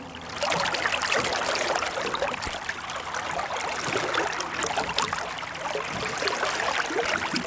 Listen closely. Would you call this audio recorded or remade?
recorded